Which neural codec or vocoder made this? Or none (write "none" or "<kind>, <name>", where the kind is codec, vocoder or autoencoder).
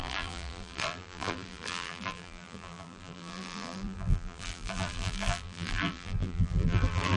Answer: vocoder, BigVGAN v2